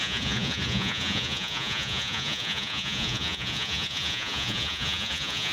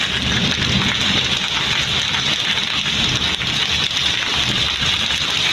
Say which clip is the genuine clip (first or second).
second